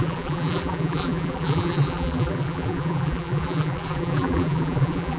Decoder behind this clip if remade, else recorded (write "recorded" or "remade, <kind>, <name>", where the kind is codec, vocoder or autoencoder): remade, vocoder, BigVGAN v2